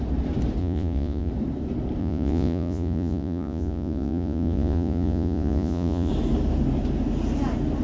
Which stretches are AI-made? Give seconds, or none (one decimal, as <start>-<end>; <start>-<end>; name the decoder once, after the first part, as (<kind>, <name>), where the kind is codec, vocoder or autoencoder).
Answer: 0.6-1.3 (vocoder, Vocos); 2.0-6.1